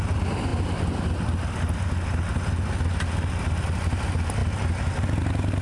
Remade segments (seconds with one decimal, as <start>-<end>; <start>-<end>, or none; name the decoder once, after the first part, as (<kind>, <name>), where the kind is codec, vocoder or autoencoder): none

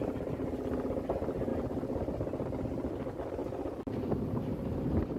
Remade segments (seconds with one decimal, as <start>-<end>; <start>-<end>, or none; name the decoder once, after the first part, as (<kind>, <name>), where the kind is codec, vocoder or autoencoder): 3.4-4.4 (vocoder, BigVGAN v2)